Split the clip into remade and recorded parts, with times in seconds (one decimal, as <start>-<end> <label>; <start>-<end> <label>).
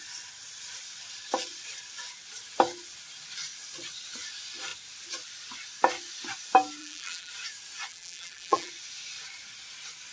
0.0-6.8 recorded; 6.8-7.3 remade; 7.3-7.9 recorded; 7.9-8.7 remade; 8.7-10.1 recorded